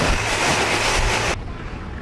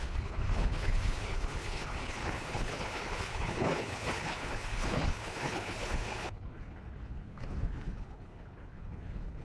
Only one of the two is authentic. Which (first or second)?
first